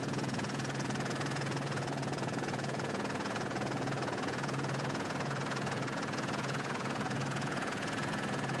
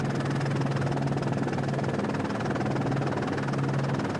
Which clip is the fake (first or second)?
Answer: first